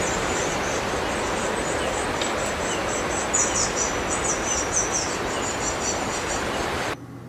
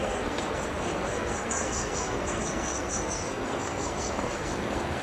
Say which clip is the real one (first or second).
first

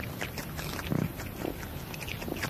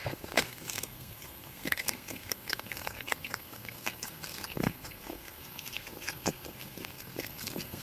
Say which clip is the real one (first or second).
first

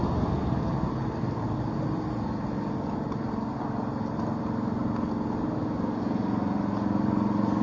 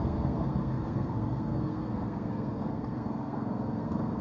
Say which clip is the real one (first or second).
first